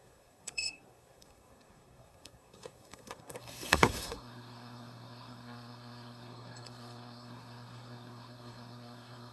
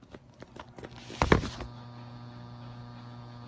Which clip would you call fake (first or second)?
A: first